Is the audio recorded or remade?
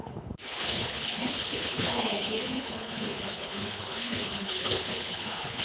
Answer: remade